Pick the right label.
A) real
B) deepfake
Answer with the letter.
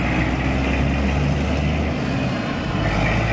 A